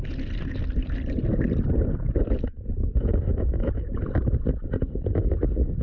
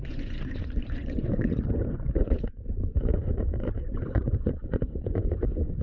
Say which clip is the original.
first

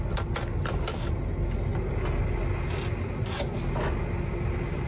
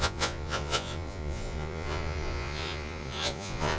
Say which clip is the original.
first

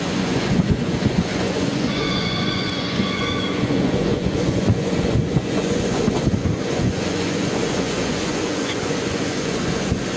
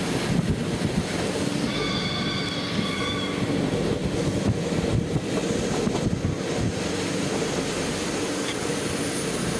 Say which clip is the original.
second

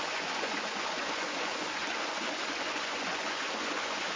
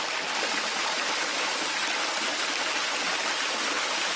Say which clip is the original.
second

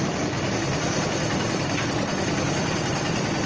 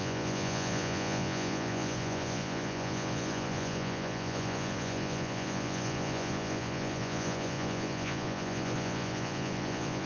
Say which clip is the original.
first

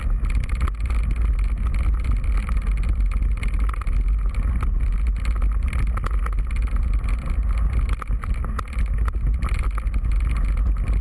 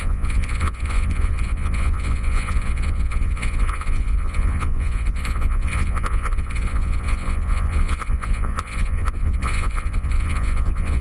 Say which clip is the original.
first